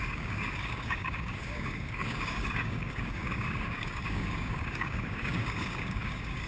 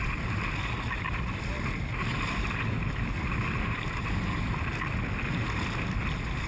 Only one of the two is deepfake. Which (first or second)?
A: first